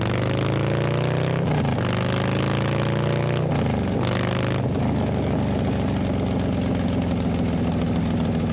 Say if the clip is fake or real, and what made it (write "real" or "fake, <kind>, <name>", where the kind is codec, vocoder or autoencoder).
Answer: real